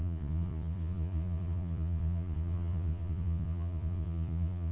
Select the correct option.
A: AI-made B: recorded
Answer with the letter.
A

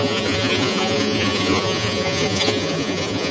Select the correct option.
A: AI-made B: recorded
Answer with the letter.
A